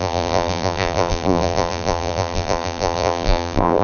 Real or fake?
fake